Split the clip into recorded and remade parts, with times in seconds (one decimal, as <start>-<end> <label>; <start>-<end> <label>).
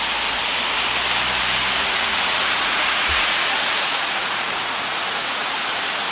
0.0-1.8 recorded; 1.8-5.5 remade; 5.5-6.1 recorded